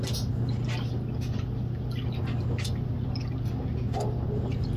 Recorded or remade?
recorded